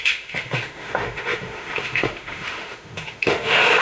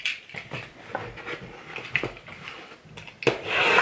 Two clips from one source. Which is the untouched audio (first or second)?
second